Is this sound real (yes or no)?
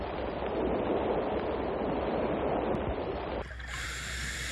no